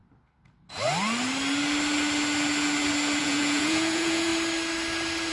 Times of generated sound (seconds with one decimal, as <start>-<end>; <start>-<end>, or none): 3.2-4.3